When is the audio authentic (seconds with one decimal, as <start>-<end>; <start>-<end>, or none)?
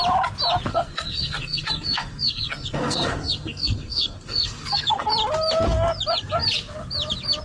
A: 0.0-0.7; 5.1-7.4